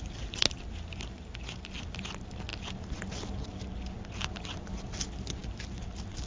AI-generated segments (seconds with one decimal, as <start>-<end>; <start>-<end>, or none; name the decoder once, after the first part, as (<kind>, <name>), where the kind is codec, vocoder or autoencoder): none